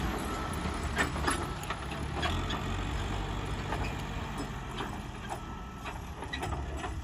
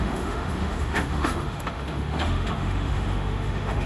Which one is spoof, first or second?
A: second